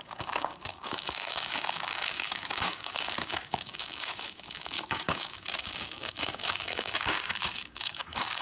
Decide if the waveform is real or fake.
fake